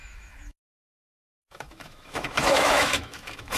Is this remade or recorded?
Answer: remade